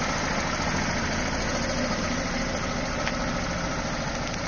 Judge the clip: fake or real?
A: real